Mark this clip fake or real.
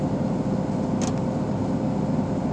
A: real